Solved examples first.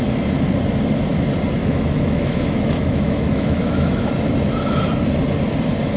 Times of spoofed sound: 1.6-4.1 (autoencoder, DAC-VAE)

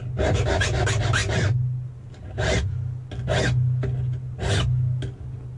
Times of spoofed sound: none

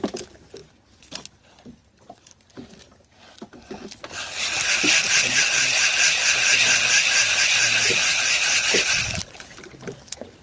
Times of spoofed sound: none

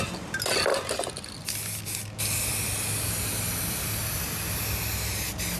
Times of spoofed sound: none

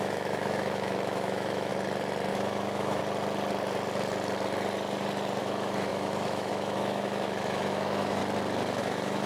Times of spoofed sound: 0.0-1.7 (autoencoder, DAC-VAE); 2.3-3.0; 5.4-8.2; 8.8-9.3

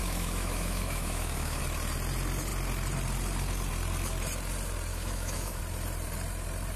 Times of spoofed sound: 0.0-1.6 (autoencoder, DAC-VAE); 4.9-5.6